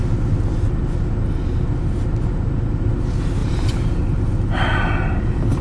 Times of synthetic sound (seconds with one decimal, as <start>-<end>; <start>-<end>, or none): 3.4-4.0